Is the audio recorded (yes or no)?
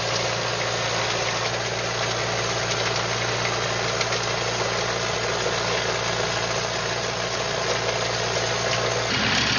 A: yes